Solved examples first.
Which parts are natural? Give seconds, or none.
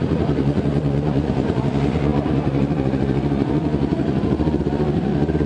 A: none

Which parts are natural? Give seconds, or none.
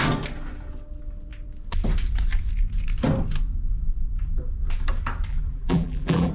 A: 0.0-5.3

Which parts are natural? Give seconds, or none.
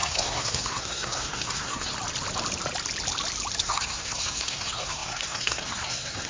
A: 1.9-3.6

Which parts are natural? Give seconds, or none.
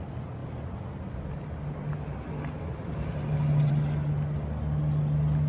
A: 0.0-5.5